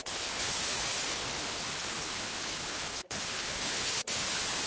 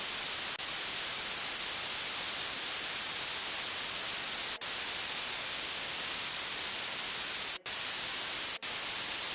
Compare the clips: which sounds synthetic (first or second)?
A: first